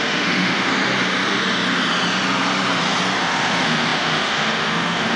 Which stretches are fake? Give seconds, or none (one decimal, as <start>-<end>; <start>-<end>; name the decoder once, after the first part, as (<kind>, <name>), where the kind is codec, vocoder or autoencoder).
0.0-0.7 (autoencoder, DAC-VAE); 3.2-5.2